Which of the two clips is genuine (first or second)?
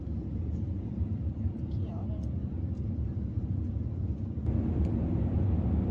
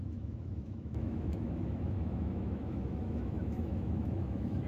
first